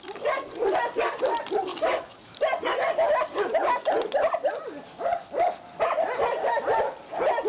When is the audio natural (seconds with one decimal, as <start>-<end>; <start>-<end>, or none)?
0.0-1.7; 2.4-7.5